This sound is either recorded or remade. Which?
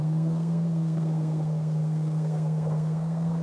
remade